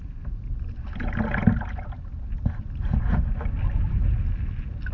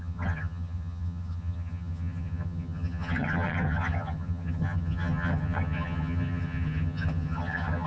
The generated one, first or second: second